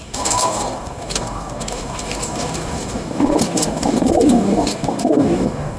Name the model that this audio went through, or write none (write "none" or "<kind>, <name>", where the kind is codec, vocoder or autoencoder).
codec, DAC